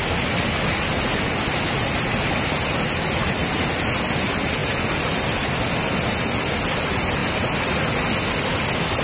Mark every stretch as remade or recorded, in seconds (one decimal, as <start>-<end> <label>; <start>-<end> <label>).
0.0-9.0 recorded